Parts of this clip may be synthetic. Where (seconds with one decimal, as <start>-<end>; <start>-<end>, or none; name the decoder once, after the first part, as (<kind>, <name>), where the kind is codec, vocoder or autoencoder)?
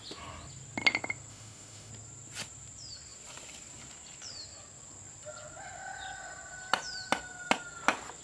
1.3-1.9 (autoencoder, DAC-VAE)